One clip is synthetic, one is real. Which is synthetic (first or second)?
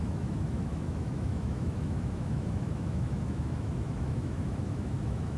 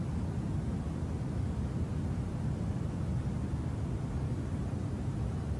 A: first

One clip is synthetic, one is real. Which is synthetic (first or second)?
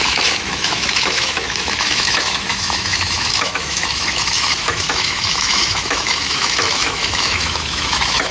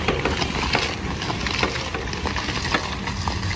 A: first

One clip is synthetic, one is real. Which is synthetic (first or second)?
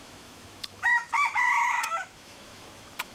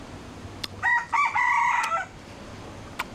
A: first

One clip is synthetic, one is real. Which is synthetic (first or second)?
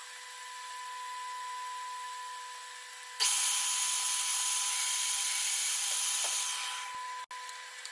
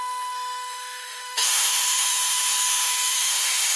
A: second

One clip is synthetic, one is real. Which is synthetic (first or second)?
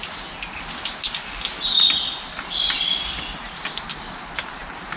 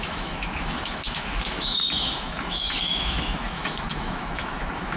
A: second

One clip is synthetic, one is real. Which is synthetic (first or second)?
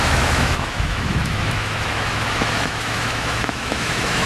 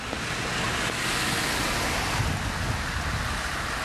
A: first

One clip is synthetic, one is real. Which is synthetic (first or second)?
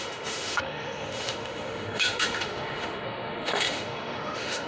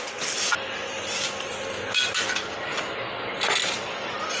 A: first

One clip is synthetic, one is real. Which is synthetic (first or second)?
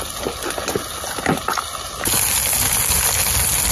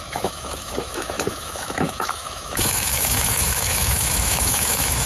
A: second